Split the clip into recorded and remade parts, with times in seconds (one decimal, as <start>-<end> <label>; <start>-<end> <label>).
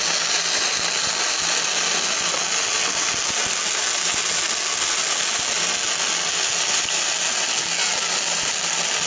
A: 0.0-9.1 recorded